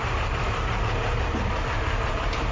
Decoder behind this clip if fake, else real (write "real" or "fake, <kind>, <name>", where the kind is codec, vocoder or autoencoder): fake, vocoder, BigVGAN v2